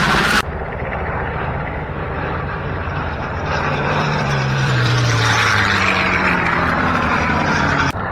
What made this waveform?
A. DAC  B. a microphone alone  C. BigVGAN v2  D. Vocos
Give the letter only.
C